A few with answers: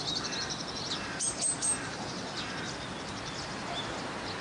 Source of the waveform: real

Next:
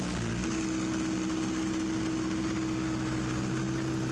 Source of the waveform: real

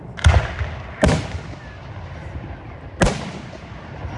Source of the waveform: real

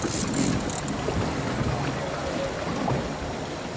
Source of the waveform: real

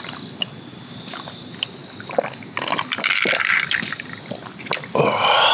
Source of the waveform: real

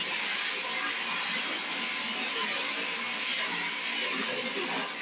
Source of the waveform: real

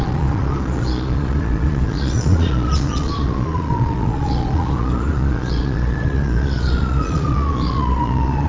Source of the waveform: fake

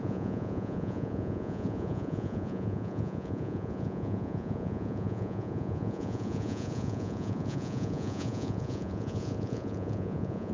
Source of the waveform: fake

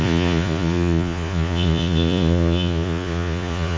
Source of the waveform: fake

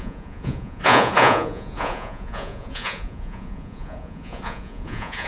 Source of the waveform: fake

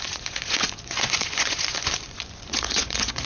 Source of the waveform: fake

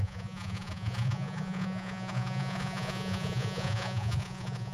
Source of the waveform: fake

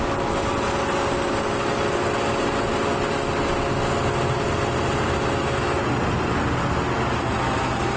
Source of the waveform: real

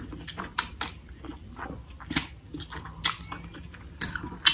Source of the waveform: real